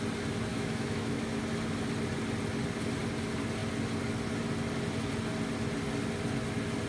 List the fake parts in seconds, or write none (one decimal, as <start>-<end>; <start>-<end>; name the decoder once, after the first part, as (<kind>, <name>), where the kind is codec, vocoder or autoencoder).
0.5-1.4 (autoencoder, DAC-VAE)